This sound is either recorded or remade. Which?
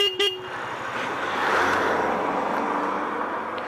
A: recorded